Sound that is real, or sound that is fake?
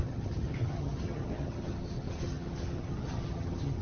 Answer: fake